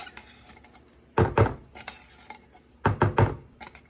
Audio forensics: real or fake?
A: real